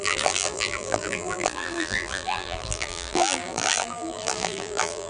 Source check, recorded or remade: remade